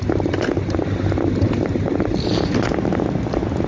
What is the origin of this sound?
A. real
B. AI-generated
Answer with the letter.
A